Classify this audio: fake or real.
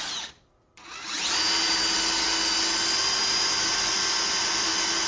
real